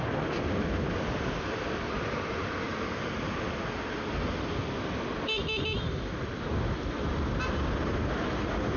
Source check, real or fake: real